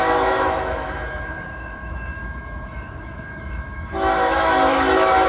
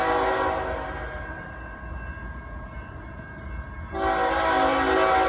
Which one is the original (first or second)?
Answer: second